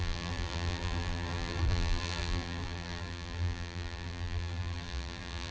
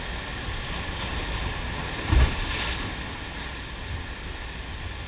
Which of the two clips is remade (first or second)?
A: first